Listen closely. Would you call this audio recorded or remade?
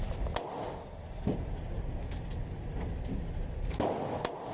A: recorded